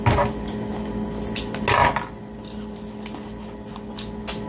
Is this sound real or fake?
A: real